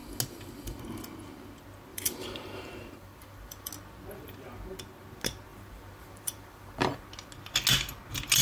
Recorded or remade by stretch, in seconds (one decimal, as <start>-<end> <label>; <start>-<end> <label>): 0.0-1.9 recorded; 1.9-3.7 remade; 3.7-5.5 recorded; 5.5-7.0 remade; 7.0-8.4 recorded